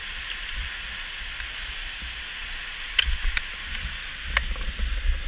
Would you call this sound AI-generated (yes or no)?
no